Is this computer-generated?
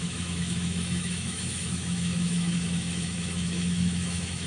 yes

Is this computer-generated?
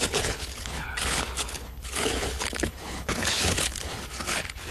yes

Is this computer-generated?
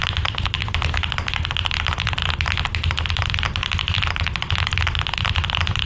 no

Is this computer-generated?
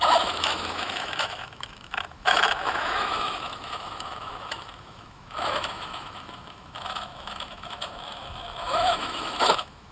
yes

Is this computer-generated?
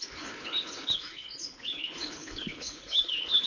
yes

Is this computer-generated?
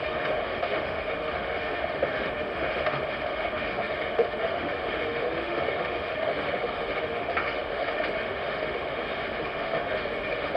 yes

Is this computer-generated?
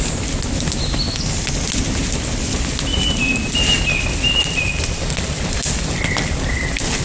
no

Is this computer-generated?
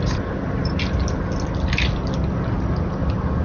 no